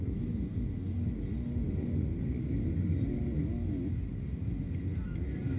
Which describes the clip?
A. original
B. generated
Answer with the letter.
A